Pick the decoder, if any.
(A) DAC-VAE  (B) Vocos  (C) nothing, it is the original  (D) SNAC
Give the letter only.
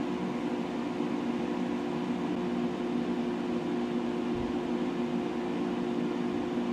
C